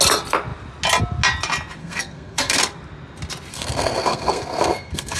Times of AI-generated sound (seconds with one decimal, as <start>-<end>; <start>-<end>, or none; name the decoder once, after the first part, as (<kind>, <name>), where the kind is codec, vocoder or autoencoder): 1.8-2.6 (codec, SNAC); 3.5-5.2